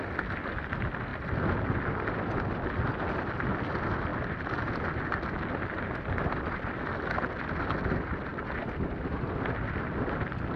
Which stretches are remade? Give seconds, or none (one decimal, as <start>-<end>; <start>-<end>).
none